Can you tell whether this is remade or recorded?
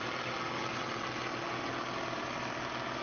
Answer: recorded